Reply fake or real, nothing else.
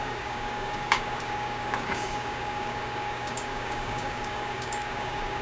fake